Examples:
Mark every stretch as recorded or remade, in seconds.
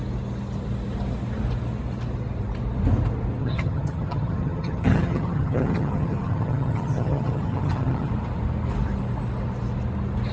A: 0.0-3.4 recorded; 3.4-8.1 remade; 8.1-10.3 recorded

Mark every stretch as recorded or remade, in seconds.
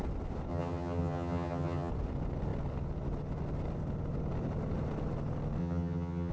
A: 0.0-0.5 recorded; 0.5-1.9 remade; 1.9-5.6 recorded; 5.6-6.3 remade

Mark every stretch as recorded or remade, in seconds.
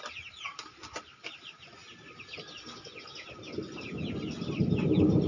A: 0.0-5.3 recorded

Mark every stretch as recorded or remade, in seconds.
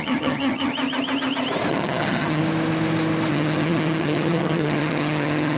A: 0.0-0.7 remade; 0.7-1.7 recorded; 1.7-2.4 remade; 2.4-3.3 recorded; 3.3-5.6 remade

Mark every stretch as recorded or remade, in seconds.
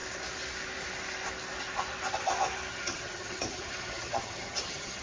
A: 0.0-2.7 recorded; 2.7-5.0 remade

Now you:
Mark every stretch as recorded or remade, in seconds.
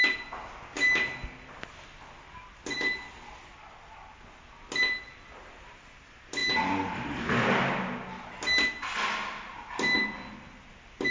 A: 0.0-11.1 recorded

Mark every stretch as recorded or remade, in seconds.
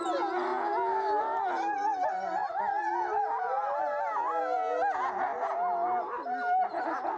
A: 0.0-7.2 recorded